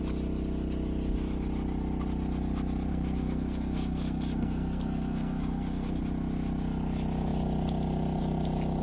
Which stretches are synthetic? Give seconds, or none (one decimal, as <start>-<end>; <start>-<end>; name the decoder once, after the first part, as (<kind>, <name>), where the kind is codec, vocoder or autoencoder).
2.9-6.0 (codec, SNAC)